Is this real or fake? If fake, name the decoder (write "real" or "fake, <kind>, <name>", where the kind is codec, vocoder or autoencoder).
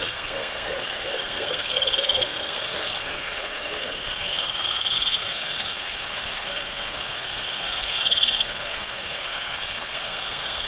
fake, codec, SNAC